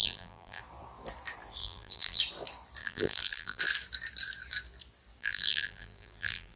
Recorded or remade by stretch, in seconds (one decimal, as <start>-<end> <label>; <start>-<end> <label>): 0.0-0.6 remade; 0.6-1.6 recorded; 1.6-2.2 remade; 2.2-2.8 recorded; 2.8-3.6 remade; 3.6-5.2 recorded; 5.2-6.6 remade

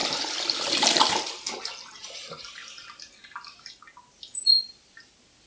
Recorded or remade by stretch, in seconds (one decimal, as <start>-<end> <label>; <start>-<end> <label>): 0.0-1.1 remade; 1.1-2.0 recorded; 2.0-2.5 remade; 2.5-5.5 recorded

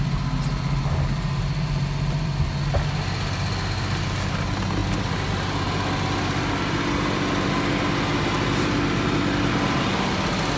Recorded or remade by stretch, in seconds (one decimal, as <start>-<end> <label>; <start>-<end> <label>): 0.0-10.6 recorded

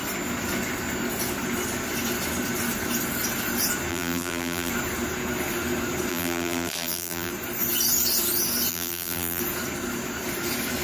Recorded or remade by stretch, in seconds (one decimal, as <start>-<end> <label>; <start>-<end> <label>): 0.0-3.9 recorded; 3.9-4.7 remade; 4.7-6.1 recorded; 6.1-7.3 remade; 7.3-8.7 recorded; 8.7-9.4 remade; 9.4-10.8 recorded

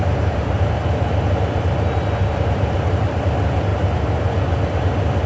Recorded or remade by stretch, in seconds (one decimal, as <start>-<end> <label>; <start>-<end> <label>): 0.0-0.8 remade; 0.8-2.2 recorded; 2.2-3.3 remade; 3.3-3.7 recorded; 3.7-4.5 remade; 4.5-5.3 recorded